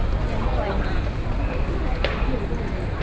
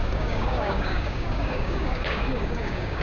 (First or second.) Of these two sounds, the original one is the first